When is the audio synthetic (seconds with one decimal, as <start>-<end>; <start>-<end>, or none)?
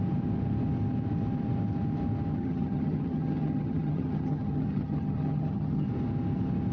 2.3-5.9